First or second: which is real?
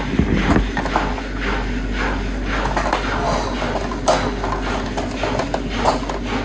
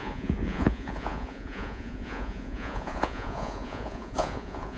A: first